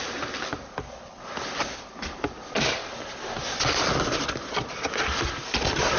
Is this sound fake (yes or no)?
no